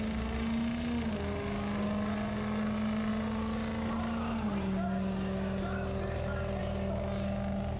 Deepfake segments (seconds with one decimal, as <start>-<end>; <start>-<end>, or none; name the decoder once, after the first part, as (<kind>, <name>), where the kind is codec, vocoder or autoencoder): none